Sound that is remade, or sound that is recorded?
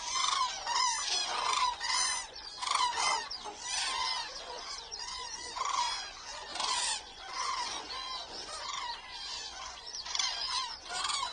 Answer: remade